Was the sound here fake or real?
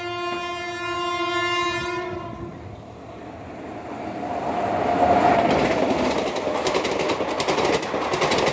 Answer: real